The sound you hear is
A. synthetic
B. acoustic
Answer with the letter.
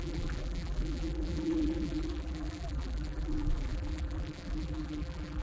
A